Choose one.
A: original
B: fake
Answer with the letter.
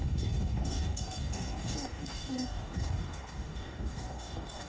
B